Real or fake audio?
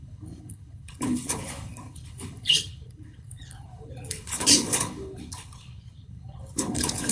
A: fake